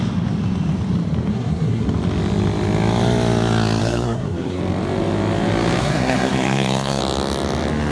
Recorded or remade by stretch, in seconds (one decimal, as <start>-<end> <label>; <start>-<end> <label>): 0.0-1.3 recorded; 1.3-1.9 remade; 1.9-3.8 recorded; 3.8-4.6 remade; 4.6-5.8 recorded; 5.8-7.0 remade; 7.0-7.9 recorded